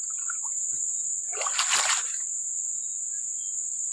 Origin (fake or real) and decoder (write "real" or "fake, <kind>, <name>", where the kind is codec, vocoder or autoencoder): real